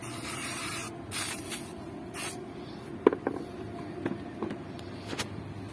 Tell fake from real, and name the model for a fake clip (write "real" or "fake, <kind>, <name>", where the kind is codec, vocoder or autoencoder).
real